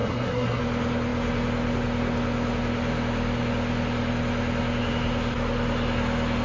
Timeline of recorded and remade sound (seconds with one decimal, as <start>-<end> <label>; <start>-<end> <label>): 0.0-0.6 remade; 0.6-6.4 recorded